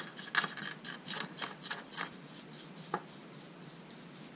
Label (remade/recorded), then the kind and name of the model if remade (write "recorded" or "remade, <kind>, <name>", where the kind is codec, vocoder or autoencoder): recorded